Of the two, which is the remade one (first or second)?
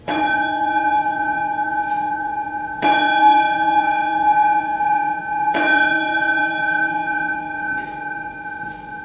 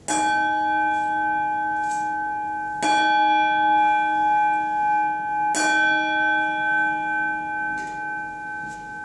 first